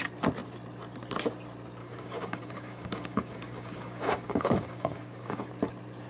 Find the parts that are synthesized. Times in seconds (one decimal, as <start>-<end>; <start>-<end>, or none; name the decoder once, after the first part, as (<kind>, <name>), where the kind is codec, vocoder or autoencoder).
1.8-5.5 (codec, DAC)